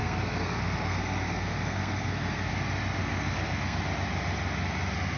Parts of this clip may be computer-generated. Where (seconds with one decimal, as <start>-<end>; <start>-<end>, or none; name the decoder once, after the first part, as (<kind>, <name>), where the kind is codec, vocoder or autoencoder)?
0.0-2.5 (codec, SNAC); 3.0-3.8